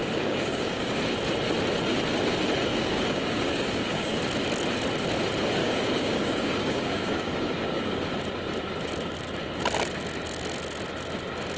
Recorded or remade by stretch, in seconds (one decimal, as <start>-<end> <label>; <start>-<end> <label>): 0.0-1.0 remade; 1.0-2.7 recorded; 2.7-4.2 remade; 4.2-5.6 recorded; 5.6-8.0 remade; 8.0-11.6 recorded